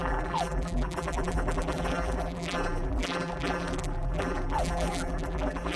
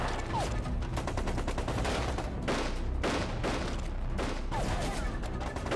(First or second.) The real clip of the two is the second